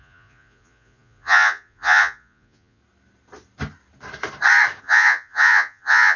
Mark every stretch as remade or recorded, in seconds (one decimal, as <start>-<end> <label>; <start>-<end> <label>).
0.0-2.8 remade; 2.8-4.8 recorded; 4.8-6.2 remade